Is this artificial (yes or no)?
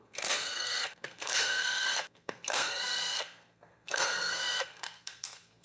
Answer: yes